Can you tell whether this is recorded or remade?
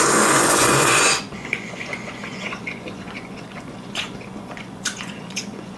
remade